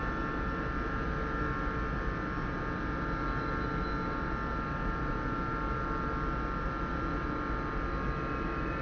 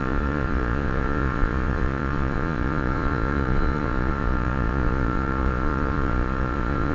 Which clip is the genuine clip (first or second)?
first